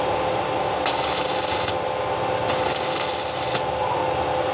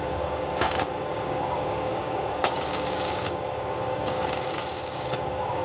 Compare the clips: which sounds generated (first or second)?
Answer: second